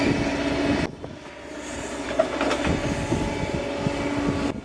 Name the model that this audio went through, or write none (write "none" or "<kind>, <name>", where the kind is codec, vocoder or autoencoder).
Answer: none